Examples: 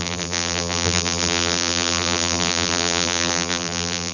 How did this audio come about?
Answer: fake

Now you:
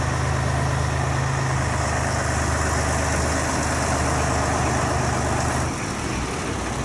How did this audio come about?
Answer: real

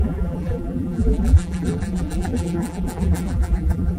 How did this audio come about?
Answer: fake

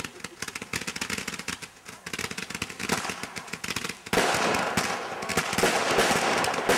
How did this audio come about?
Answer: real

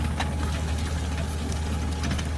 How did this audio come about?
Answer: real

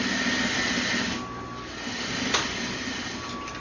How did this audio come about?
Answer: real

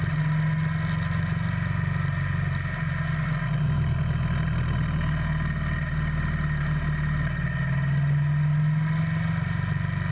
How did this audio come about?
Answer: real